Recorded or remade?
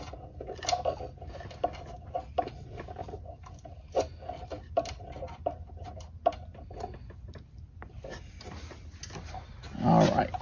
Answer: recorded